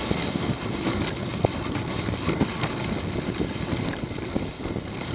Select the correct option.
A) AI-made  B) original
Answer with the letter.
B